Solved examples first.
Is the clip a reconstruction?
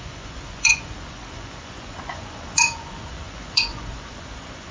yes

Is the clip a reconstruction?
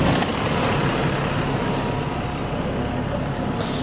no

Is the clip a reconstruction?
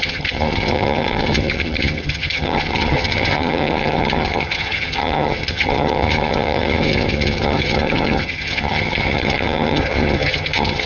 yes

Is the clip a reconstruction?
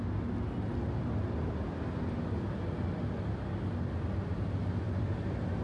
no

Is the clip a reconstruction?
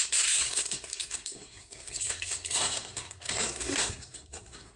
yes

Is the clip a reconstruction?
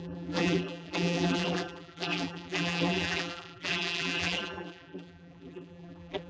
yes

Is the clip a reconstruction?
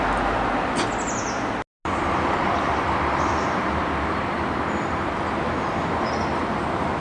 no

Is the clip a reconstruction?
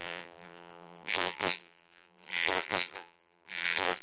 yes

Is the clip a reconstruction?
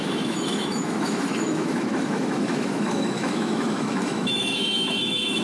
yes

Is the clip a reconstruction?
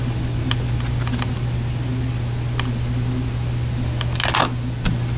no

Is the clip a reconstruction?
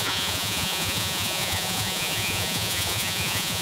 yes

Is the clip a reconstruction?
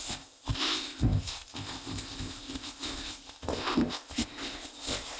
yes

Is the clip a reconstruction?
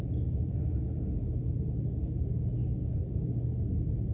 no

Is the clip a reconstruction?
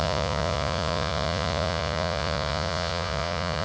yes